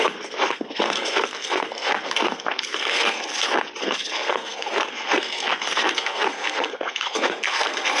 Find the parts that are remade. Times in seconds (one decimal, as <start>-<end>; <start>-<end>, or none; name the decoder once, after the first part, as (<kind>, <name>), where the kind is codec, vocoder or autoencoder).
0.0-3.2 (codec, SNAC); 3.8-8.0